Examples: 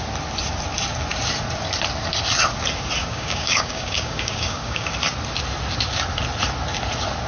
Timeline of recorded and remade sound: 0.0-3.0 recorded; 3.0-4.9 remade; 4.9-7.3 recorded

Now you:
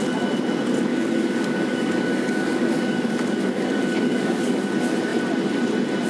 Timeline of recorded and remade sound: 0.0-0.9 recorded; 0.9-4.6 remade; 4.6-6.1 recorded

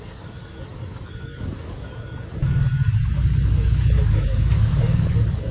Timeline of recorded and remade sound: 0.0-5.5 remade